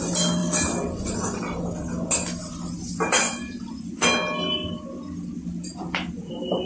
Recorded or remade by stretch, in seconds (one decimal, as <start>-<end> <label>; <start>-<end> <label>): 0.0-5.7 recorded; 5.7-6.7 remade

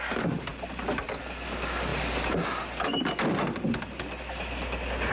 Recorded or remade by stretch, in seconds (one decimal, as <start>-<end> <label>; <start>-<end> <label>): 0.0-5.1 recorded

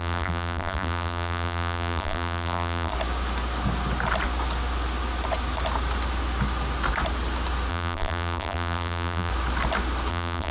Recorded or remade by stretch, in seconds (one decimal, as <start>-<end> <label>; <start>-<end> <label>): 0.0-2.9 remade; 2.9-7.7 recorded; 7.7-9.3 remade; 9.3-10.1 recorded; 10.1-10.5 remade

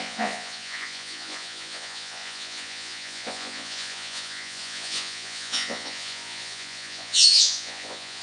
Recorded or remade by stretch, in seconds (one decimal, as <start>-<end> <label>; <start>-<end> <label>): 0.0-8.2 remade

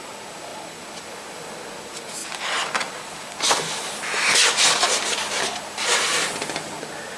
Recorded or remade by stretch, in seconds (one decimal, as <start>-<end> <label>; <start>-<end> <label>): 0.0-7.2 recorded

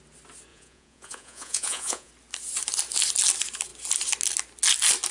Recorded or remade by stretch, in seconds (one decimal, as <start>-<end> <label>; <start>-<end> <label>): 0.0-0.5 recorded; 0.5-2.1 remade; 2.1-5.1 recorded

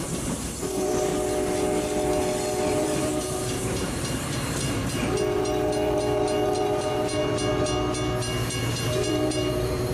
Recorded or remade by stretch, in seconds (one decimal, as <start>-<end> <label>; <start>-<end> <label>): 0.0-1.1 remade; 1.1-2.7 recorded; 2.7-7.2 remade; 7.2-8.6 recorded; 8.6-9.9 remade